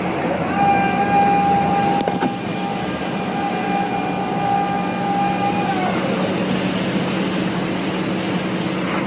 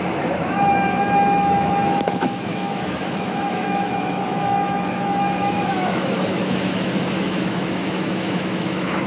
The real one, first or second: first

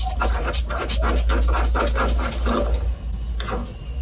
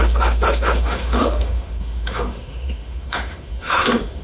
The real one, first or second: first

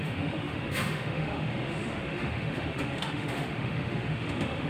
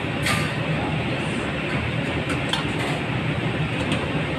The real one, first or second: second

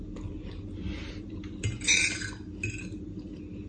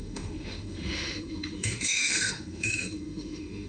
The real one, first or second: first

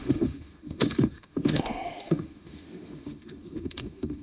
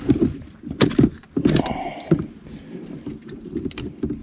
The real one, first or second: second